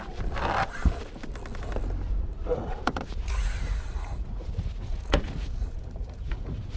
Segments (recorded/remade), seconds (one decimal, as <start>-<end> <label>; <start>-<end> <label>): 0.0-2.3 recorded; 2.3-6.8 remade